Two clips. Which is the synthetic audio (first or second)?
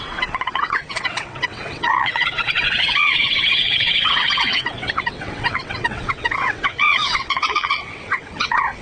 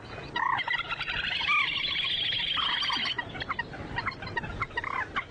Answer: first